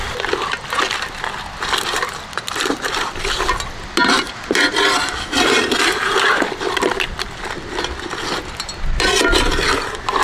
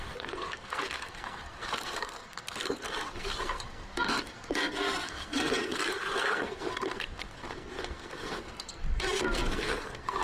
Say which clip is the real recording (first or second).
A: first